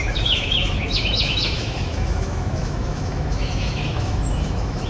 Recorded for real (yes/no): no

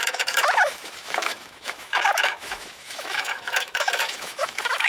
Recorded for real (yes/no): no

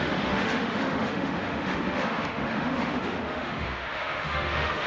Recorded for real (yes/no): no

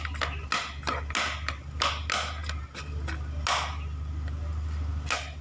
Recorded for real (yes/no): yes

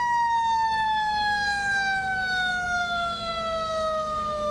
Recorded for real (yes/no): no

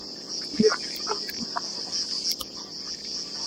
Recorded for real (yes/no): yes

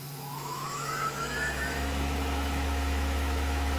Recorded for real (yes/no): no